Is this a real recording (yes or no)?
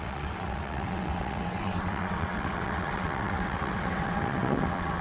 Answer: no